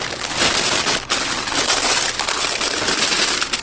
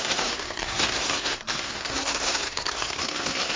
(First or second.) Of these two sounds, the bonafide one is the first